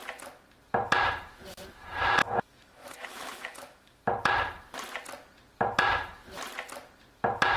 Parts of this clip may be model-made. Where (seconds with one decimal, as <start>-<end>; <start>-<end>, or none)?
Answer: 2.2-4.0